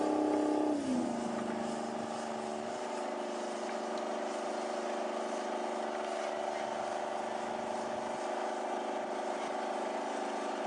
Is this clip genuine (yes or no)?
yes